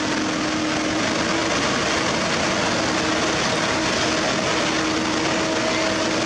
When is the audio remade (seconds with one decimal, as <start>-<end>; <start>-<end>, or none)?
none